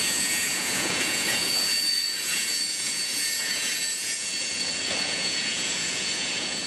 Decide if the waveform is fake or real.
fake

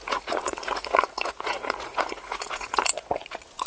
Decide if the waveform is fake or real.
fake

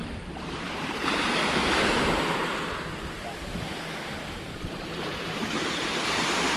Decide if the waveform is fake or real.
fake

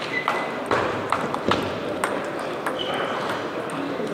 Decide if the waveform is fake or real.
fake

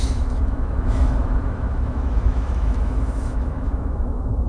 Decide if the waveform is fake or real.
fake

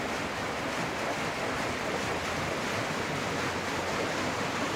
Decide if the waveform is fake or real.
real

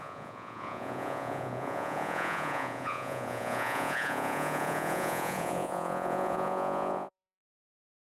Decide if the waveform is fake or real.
fake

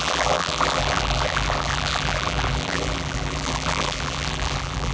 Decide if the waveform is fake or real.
fake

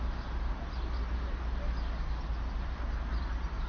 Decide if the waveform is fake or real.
real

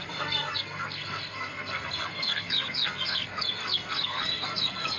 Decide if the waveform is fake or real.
fake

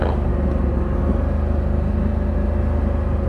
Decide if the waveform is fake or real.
real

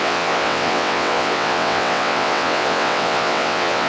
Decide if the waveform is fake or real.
fake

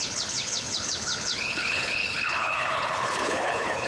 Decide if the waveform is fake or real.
fake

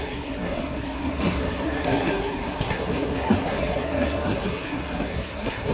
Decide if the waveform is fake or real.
fake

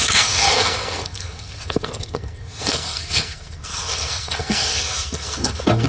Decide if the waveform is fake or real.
fake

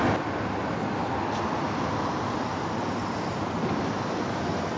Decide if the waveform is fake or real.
real